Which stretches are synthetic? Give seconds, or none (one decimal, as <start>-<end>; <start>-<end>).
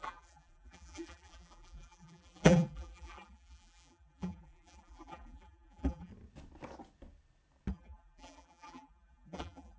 0.0-6.1; 7.7-9.8